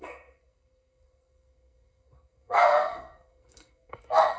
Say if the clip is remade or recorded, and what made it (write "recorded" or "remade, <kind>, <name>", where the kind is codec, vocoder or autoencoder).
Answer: remade, codec, SNAC